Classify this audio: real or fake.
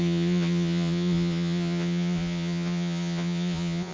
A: fake